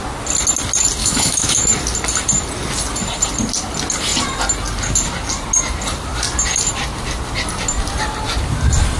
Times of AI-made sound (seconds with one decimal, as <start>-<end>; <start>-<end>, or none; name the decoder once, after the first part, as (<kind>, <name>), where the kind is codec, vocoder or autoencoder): 1.0-1.6 (autoencoder, DAC-VAE)

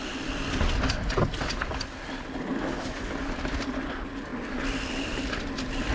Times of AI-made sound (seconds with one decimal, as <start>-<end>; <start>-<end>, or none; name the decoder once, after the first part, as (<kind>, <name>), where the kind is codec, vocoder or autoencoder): 2.5-3.1 (autoencoder, DAC-VAE)

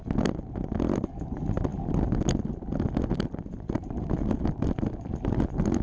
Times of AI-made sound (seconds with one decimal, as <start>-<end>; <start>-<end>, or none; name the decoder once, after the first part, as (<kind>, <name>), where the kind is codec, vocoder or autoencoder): none

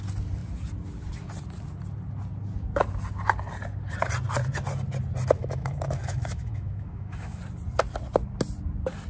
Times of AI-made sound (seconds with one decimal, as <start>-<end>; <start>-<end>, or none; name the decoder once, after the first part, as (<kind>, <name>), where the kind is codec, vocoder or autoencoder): 5.4-7.4 (autoencoder, DAC-VAE)

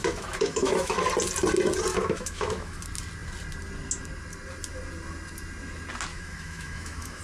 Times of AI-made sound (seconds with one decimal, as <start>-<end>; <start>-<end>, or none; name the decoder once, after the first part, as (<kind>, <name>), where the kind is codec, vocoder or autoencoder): 0.0-1.0 (autoencoder, DAC-VAE); 1.9-2.8; 6.1-7.2

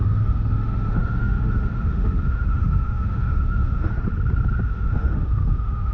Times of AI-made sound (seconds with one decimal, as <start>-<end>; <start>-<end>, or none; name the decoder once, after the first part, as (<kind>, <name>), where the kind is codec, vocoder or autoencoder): 0.0-3.9 (autoencoder, DAC-VAE); 4.7-5.9

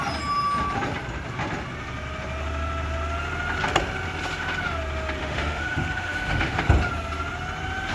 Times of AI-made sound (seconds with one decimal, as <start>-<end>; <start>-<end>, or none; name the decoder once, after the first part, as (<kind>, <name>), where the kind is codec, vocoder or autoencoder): 5.2-6.6 (autoencoder, DAC-VAE)